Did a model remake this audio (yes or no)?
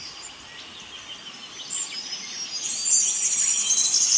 no